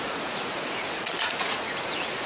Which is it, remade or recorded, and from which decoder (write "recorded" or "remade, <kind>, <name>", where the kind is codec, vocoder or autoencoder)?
remade, vocoder, Vocos